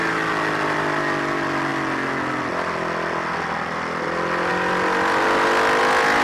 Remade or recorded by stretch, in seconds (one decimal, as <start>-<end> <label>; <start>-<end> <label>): 0.0-6.2 recorded